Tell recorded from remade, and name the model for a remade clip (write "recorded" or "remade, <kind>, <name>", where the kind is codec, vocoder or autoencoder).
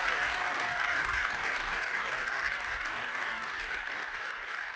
remade, codec, DAC